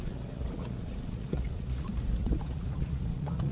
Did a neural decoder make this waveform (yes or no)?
yes